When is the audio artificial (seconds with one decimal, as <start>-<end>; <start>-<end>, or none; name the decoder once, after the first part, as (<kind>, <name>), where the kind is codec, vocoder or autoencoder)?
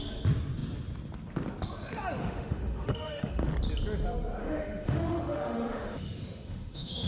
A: 2.2-3.5 (autoencoder, DAC-VAE); 4.4-7.1